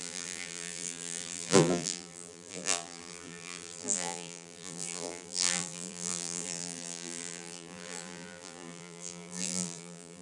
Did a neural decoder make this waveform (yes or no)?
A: yes